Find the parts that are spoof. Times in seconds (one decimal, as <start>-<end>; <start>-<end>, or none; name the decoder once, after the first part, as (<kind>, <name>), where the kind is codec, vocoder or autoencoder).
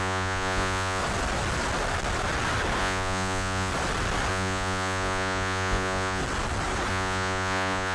0.0-1.0 (vocoder, Vocos); 2.8-3.7; 4.3-6.2; 6.9-7.9